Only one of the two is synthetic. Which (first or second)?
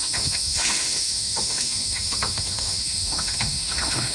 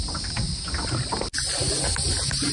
first